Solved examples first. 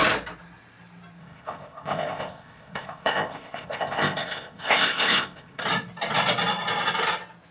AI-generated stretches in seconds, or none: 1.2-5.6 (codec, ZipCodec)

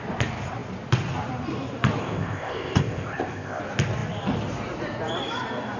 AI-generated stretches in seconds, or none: 2.0-3.6 (codec, ZipCodec)

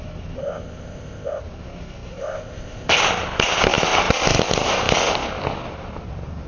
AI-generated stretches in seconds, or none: 0.4-1.4 (codec, ZipCodec); 2.2-3.0